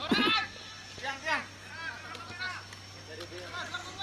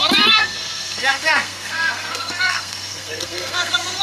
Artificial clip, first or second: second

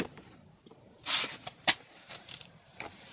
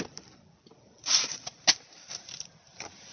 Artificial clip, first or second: first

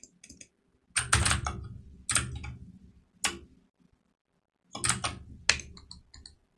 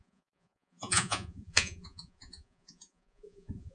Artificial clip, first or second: second